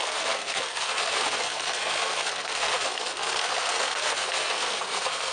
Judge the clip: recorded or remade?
remade